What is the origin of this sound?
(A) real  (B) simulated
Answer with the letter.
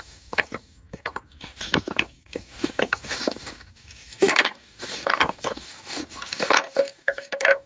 B